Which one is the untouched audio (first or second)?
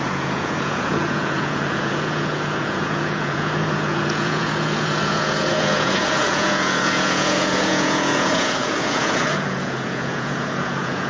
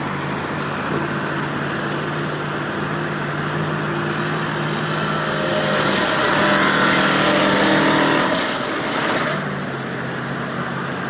second